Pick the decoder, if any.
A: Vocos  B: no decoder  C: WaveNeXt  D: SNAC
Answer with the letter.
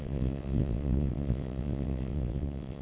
C